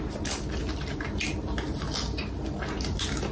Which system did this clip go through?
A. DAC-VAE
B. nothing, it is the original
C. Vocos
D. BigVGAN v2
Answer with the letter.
B